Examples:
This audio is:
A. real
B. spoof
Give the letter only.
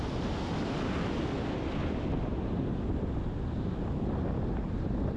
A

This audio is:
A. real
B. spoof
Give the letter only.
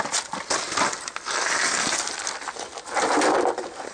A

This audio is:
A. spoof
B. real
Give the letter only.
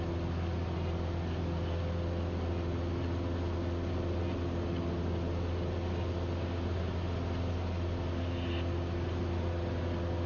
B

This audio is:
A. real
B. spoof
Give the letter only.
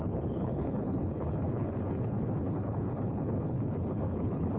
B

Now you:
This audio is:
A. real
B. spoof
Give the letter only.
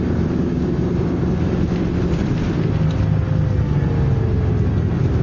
A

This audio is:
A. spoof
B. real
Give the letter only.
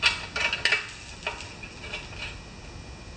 B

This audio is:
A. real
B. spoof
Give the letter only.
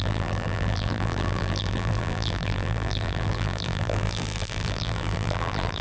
B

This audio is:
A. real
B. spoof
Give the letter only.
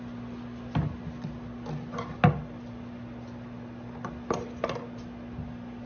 A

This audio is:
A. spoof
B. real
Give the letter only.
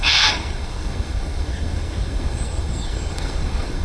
A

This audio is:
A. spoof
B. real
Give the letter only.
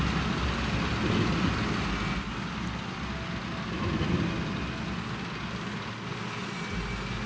B